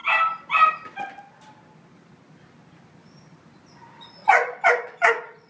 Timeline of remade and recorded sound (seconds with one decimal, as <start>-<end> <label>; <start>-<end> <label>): 0.0-4.2 recorded; 4.2-5.5 remade